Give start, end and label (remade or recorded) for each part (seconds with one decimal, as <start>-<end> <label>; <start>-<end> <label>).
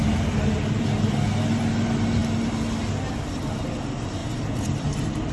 0.0-4.2 recorded; 4.2-5.3 remade